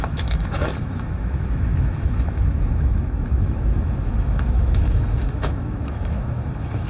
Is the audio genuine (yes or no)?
no